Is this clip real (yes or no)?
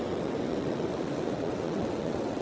no